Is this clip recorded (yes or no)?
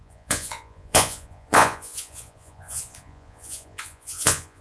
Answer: no